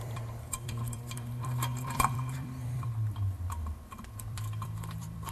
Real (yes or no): no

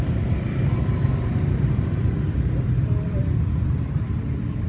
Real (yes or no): no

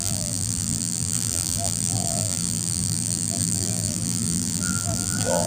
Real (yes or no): no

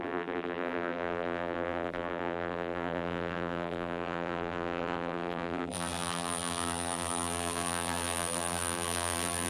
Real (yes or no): no